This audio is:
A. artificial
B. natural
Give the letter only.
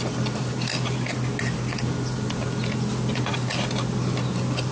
B